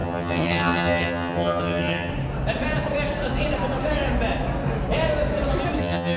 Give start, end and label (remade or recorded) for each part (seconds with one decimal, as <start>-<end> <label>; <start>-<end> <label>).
0.0-2.1 remade; 2.1-5.8 recorded; 5.8-6.2 remade